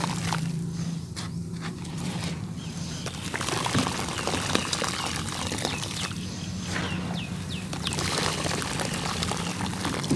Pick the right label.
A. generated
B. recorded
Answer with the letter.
A